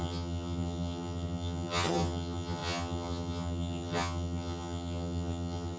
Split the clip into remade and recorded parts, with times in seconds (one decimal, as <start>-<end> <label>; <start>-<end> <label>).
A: 0.0-5.8 remade